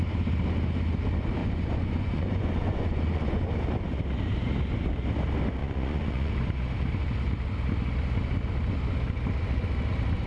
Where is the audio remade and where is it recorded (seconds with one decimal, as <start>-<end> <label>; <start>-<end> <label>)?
0.0-1.4 recorded; 1.4-3.5 remade; 3.5-5.6 recorded; 5.6-6.3 remade; 6.3-10.3 recorded